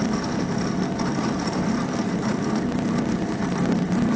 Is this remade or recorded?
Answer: recorded